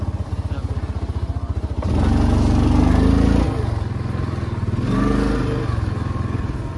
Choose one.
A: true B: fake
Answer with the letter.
A